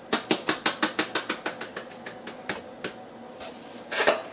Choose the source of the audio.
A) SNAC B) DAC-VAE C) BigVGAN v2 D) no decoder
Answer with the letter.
D